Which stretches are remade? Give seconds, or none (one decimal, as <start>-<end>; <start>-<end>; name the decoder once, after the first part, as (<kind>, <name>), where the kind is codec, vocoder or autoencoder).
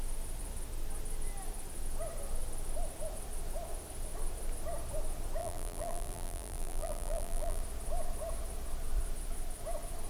5.4-7.6 (vocoder, BigVGAN v2)